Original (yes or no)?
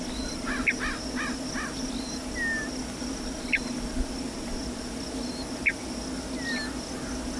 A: yes